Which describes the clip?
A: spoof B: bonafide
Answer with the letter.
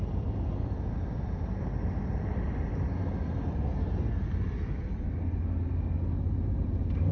B